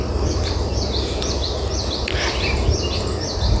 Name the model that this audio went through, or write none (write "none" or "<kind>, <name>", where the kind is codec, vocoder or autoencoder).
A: none